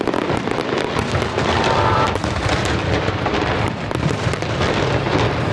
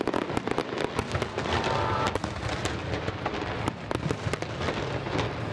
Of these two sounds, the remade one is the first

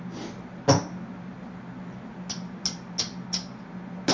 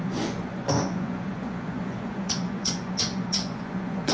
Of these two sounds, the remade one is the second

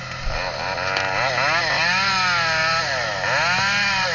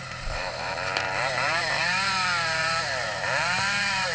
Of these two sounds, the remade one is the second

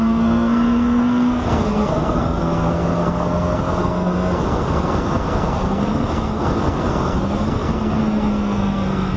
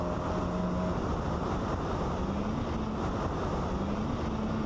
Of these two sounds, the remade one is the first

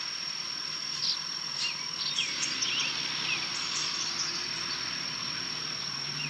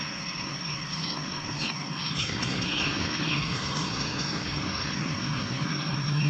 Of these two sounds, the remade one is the second